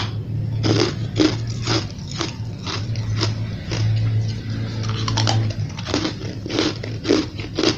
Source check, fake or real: real